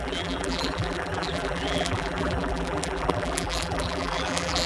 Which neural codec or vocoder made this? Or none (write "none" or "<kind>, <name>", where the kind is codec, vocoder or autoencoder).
vocoder, BigVGAN v2